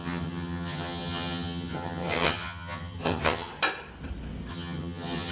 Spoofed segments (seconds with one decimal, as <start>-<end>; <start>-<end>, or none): 0.0-3.5; 4.5-5.3